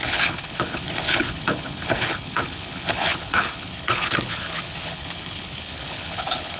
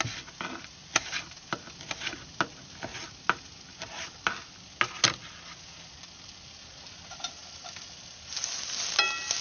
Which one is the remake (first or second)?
first